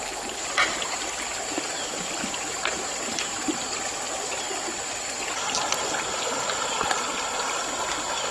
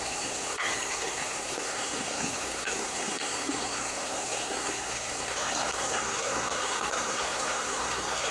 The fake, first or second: second